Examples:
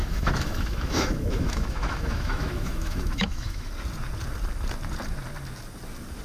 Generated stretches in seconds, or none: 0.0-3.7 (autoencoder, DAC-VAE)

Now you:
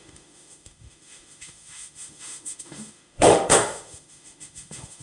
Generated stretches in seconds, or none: 0.0-5.0 (autoencoder, DAC-VAE)

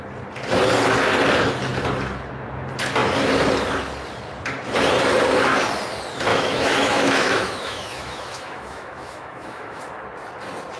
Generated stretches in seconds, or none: 6.3-9.8 (autoencoder, DAC-VAE)